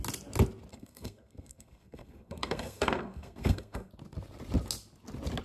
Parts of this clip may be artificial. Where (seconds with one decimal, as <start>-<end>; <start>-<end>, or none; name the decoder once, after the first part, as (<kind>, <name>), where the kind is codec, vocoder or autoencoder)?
0.7-3.9 (codec, SNAC)